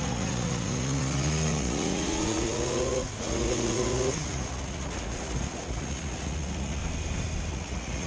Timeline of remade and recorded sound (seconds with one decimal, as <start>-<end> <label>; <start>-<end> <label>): 0.0-6.8 remade; 6.8-7.5 recorded; 7.5-8.1 remade